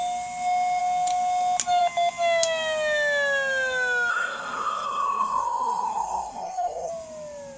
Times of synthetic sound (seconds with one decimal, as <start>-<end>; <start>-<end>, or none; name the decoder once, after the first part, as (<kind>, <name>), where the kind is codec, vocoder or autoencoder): 4.1-6.9 (codec, SNAC)